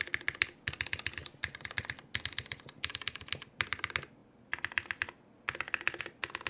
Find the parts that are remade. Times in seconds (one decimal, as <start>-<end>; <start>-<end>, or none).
none